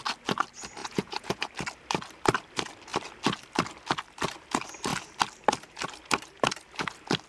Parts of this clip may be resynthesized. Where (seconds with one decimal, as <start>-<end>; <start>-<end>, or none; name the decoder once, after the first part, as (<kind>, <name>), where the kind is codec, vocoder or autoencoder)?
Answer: 0.8-1.5 (vocoder, Vocos)